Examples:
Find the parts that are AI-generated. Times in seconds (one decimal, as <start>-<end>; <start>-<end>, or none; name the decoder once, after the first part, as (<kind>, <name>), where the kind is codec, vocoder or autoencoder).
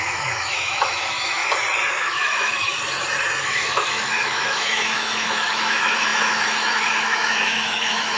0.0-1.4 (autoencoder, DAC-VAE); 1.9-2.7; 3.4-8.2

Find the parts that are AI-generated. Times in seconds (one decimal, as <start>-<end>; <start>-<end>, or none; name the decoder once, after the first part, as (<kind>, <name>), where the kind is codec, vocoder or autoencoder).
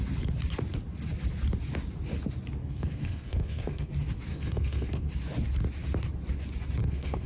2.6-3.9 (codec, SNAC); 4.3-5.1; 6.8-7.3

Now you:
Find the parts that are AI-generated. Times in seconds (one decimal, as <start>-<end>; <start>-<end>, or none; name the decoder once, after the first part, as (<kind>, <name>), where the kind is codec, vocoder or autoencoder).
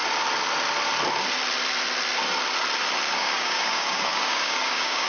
3.1-5.1 (codec, DAC)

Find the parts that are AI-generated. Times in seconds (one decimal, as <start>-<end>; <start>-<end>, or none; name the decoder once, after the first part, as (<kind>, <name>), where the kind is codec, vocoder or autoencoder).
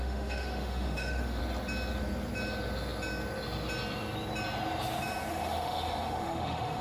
0.0-1.4 (autoencoder, DAC-VAE); 5.3-6.8